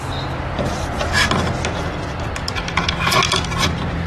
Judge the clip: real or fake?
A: real